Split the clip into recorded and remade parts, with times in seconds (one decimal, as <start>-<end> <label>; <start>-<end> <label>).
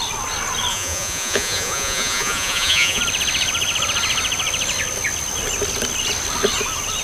0.0-0.7 recorded; 0.7-3.0 remade; 3.0-7.0 recorded